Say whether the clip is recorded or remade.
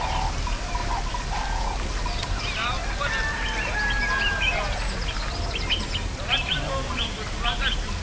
recorded